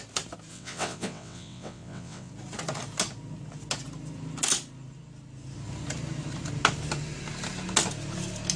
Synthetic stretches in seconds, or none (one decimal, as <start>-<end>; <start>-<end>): 0.5-2.3